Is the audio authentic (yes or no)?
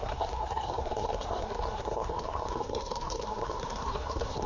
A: no